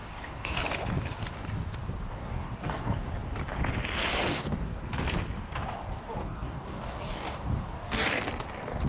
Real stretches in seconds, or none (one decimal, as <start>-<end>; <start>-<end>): 0.6-2.1; 3.1-4.3; 4.8-6.2; 8.2-8.9